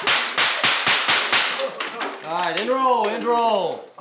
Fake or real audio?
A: real